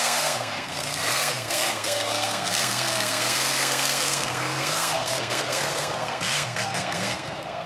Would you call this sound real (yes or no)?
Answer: no